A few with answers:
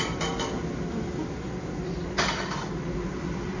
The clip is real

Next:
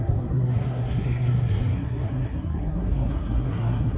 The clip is fake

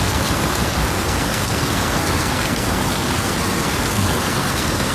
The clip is fake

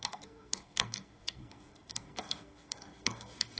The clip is fake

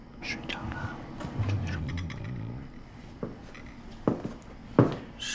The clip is real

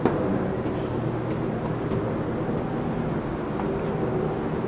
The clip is real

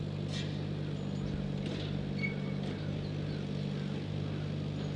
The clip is real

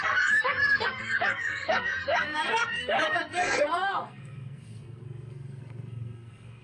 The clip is fake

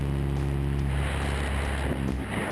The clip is real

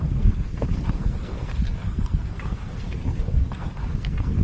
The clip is fake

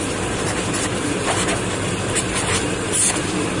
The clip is real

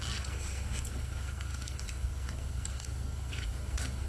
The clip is fake